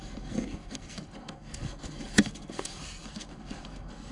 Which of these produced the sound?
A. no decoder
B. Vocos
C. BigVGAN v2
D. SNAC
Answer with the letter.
D